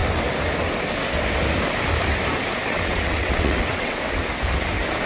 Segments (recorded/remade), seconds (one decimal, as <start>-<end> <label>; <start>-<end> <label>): 0.0-2.6 recorded; 2.6-4.0 remade; 4.0-5.1 recorded